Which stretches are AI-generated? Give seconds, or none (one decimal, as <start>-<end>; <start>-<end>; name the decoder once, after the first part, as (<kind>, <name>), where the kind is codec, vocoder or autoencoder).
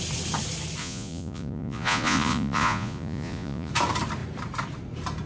0.8-3.7 (vocoder, Vocos)